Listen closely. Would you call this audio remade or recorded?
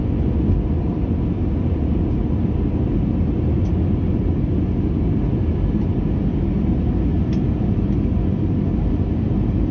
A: recorded